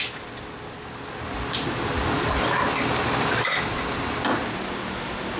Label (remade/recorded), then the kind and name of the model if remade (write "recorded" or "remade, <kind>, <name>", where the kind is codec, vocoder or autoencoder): recorded